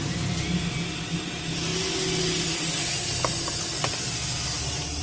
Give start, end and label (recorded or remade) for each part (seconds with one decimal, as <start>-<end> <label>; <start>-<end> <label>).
0.0-5.0 recorded